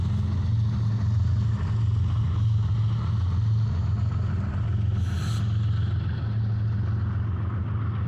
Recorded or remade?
recorded